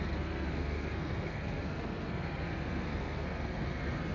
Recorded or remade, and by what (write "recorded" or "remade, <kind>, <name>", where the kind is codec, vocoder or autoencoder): remade, codec, SNAC